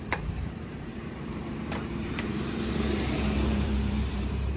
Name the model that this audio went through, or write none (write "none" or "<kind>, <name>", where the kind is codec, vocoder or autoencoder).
vocoder, BigVGAN v2